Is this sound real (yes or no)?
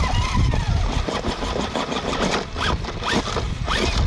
yes